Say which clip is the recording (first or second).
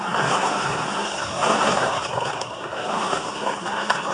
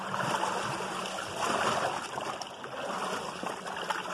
second